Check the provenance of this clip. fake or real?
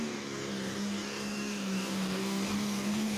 fake